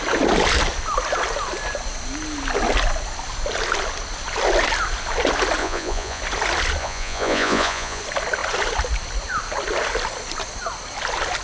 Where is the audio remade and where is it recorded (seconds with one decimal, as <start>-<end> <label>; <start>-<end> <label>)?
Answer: 0.0-5.6 recorded; 5.6-6.2 remade; 6.2-6.8 recorded; 6.8-8.0 remade; 8.0-11.4 recorded